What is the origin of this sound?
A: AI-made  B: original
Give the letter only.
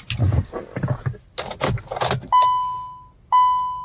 B